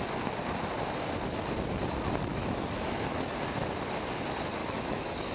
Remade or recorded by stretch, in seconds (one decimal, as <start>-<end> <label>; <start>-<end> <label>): 0.0-2.3 recorded; 2.3-3.3 remade; 3.3-4.6 recorded; 4.6-5.3 remade